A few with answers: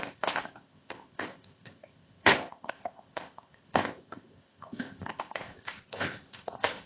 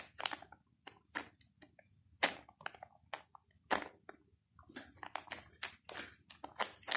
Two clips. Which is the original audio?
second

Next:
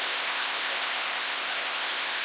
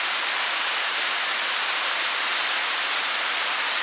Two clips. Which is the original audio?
second